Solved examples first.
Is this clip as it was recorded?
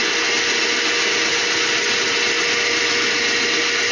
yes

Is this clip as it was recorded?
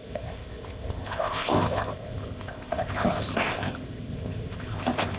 no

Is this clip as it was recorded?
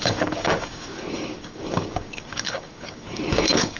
no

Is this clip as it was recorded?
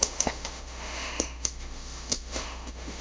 no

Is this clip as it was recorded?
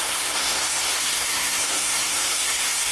no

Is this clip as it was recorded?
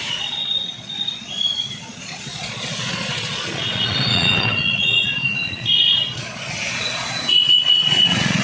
no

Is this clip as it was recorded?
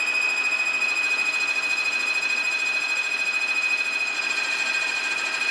yes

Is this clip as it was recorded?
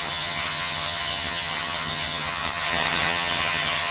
no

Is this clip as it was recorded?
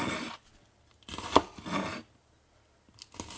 yes